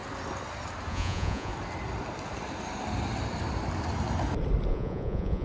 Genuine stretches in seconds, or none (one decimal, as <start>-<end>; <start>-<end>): 0.0-0.9; 1.5-4.7